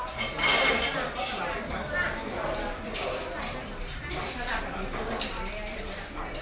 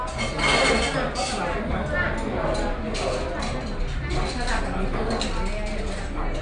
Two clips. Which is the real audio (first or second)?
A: second